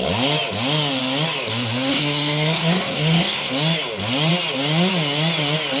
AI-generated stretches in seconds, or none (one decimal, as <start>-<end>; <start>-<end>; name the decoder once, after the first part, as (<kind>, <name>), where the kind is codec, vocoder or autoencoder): 1.9-3.5 (codec, SNAC)